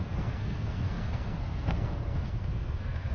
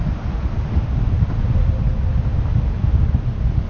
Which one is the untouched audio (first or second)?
second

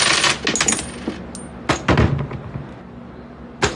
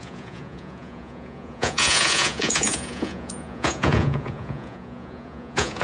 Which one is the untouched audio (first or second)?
first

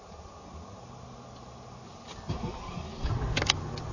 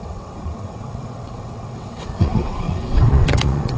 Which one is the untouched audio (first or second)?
first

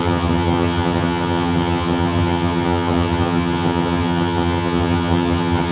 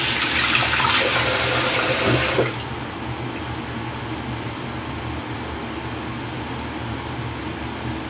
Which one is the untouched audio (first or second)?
second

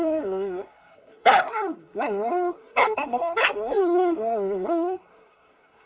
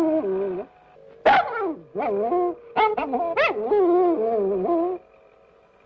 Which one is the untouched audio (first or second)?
second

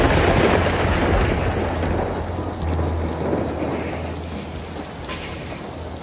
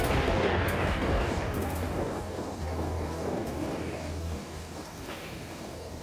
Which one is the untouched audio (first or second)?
first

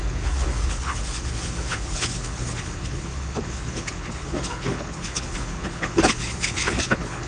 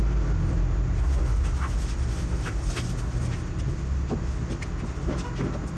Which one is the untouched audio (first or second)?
second